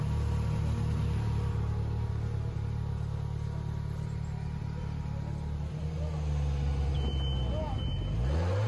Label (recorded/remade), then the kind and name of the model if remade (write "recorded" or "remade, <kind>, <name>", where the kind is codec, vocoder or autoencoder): recorded